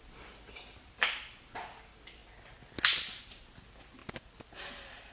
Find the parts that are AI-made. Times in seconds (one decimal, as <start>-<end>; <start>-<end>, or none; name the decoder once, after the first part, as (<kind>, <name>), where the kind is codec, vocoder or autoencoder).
none